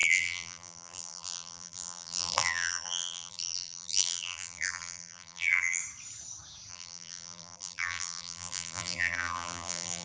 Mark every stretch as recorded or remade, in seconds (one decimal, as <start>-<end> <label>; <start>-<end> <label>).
0.0-5.8 remade; 5.8-6.7 recorded; 6.7-10.0 remade